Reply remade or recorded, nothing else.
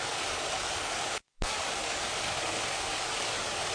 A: remade